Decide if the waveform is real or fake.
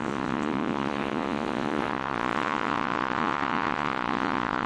fake